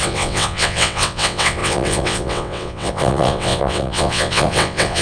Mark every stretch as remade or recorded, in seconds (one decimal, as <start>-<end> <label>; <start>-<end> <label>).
0.0-5.0 remade